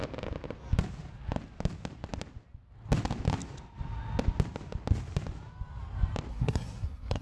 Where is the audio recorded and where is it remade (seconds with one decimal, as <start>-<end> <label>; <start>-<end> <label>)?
0.0-6.3 recorded; 6.3-7.2 remade